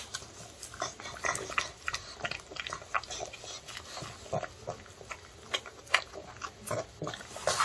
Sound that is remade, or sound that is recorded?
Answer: recorded